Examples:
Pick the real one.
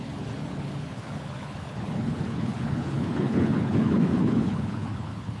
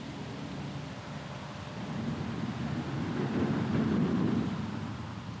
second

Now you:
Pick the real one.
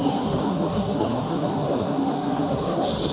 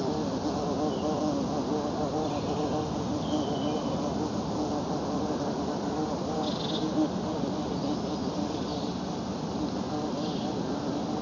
second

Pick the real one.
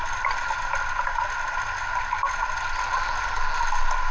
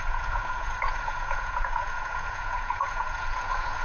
first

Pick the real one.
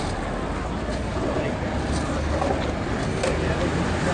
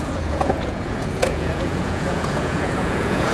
first